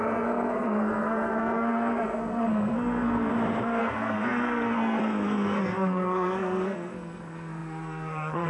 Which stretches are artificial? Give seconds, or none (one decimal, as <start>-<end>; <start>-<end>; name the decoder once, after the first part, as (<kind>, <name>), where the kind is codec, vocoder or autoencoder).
0.0-3.3 (codec, SNAC); 3.8-8.5